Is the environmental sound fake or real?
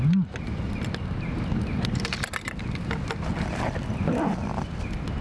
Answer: real